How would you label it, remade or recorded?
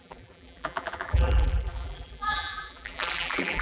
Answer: remade